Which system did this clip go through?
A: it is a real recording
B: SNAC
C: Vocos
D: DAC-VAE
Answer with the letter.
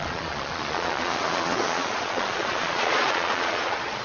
C